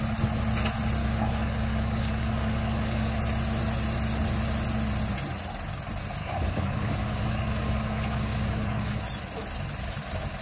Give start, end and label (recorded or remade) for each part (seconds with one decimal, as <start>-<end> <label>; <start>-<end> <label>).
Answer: 0.0-1.0 recorded; 1.0-3.2 remade; 3.2-6.2 recorded; 6.2-9.0 remade; 9.0-10.4 recorded